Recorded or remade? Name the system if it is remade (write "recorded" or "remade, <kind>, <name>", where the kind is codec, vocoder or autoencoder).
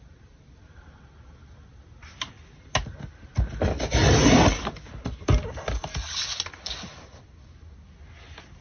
recorded